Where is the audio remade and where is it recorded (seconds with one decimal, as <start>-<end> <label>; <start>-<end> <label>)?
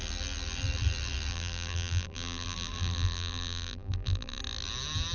0.0-1.3 recorded; 1.3-4.4 remade; 4.4-5.1 recorded